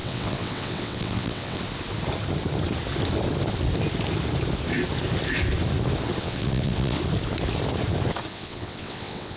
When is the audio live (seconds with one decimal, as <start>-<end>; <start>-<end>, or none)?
1.6-6.2; 7.0-8.3